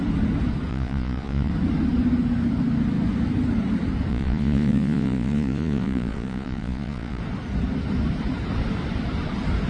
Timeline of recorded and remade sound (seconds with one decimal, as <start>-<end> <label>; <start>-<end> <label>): 0.0-0.7 recorded; 0.7-1.5 remade; 1.5-4.1 recorded; 4.1-7.2 remade; 7.2-9.7 recorded